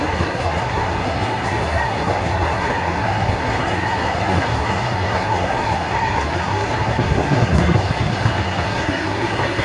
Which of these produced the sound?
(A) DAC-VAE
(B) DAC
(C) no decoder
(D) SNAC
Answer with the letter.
D